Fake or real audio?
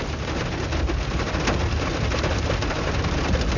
real